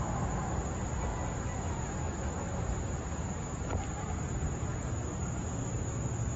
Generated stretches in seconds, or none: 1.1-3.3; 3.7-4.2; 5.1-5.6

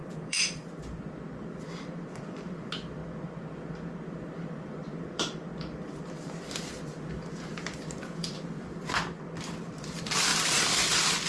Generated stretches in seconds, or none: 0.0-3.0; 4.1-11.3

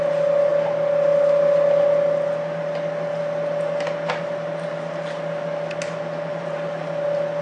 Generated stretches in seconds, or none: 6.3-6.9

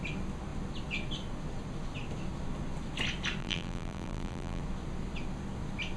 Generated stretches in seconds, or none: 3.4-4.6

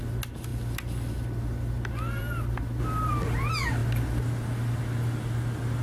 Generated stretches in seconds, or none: none